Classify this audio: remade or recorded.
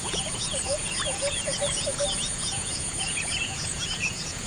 remade